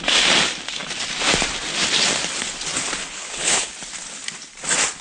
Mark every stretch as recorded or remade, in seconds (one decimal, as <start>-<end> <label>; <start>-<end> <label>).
0.0-3.1 recorded; 3.1-3.7 remade; 3.7-5.0 recorded